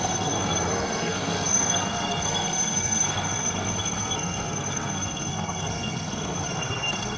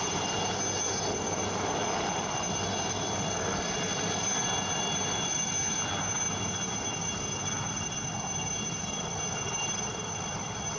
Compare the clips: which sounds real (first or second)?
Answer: second